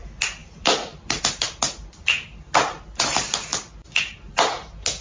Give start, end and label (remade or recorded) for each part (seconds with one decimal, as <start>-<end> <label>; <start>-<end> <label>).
0.0-0.4 recorded; 0.4-1.2 remade; 1.2-3.5 recorded; 3.5-4.3 remade; 4.3-5.0 recorded